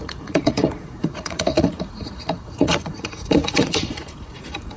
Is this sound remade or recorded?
remade